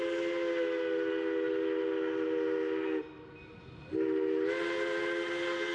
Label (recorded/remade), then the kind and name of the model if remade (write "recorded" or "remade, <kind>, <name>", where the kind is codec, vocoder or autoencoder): recorded